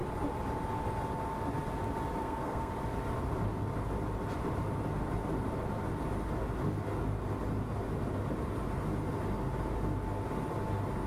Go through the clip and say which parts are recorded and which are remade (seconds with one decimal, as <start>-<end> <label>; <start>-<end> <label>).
0.0-2.2 recorded; 2.2-2.7 remade; 2.7-11.1 recorded

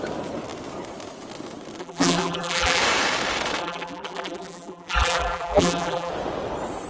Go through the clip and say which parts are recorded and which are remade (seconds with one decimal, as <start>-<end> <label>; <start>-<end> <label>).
0.0-1.8 recorded; 1.8-2.8 remade; 2.8-3.6 recorded; 3.6-6.1 remade; 6.1-6.9 recorded

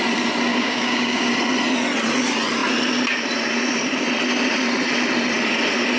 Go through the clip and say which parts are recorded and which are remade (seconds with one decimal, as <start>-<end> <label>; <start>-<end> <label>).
0.0-0.5 recorded; 0.5-1.3 remade; 1.3-6.0 recorded

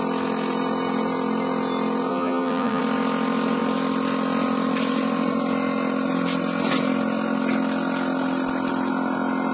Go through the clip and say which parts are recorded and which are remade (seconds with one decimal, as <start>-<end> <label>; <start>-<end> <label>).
0.0-2.1 recorded; 2.1-2.8 remade; 2.8-9.5 recorded